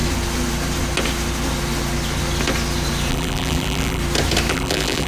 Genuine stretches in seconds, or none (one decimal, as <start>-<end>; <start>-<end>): 0.0-3.1; 4.0-4.5

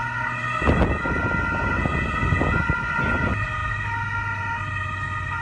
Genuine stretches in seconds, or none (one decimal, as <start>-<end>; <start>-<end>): 0.0-5.4

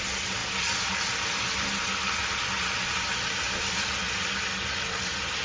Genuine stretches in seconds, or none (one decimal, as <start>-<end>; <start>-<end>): 0.0-5.4